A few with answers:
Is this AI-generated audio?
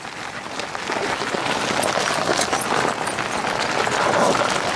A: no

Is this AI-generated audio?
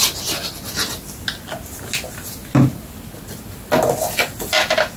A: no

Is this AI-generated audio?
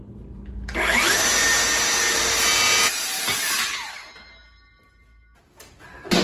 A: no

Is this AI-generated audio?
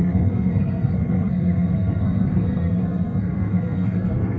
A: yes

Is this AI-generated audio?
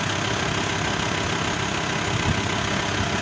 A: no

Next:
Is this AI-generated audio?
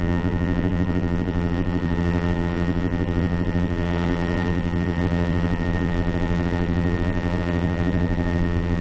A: yes